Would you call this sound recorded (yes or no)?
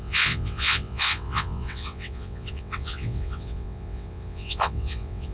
no